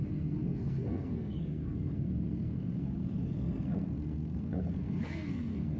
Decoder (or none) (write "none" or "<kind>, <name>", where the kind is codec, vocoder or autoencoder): codec, SNAC